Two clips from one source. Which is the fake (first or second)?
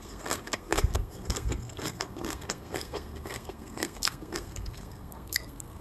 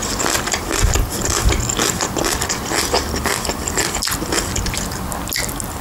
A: first